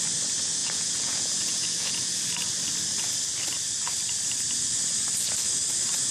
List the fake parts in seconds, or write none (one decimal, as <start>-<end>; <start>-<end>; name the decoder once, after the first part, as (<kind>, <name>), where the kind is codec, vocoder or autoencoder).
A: 0.6-2.2 (vocoder, Vocos)